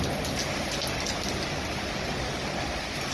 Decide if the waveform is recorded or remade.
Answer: recorded